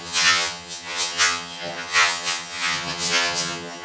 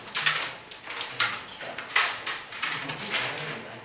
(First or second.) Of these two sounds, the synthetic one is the first